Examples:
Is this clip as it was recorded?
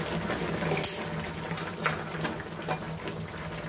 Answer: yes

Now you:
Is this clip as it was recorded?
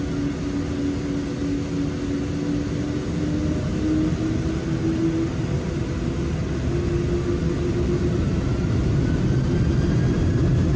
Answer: yes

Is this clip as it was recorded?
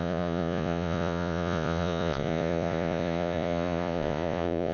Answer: no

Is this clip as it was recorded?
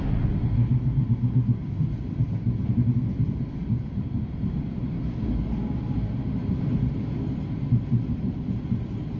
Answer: yes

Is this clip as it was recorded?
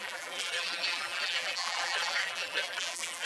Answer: no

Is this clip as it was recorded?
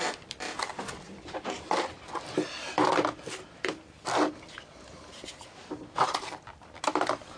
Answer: yes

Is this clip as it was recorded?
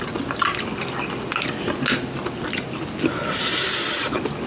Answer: yes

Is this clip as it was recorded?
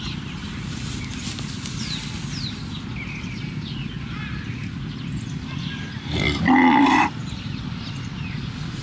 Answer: yes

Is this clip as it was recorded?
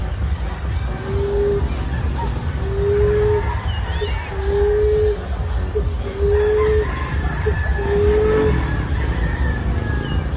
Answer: yes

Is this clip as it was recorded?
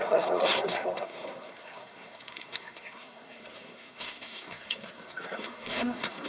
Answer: no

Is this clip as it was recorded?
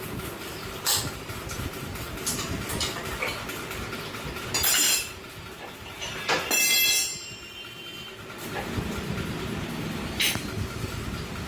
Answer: yes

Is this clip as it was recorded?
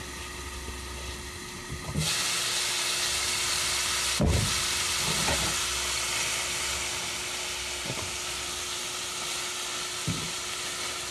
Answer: yes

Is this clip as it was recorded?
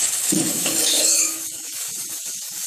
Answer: no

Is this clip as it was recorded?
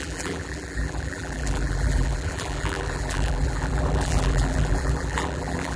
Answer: no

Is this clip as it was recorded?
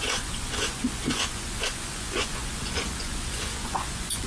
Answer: no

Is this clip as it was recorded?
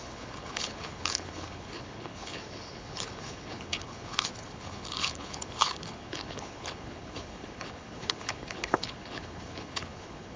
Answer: no